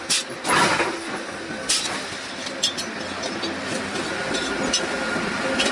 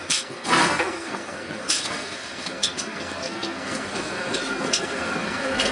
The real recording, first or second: first